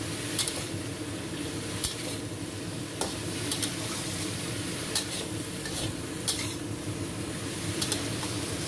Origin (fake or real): fake